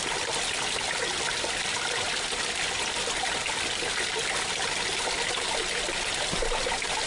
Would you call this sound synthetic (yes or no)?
no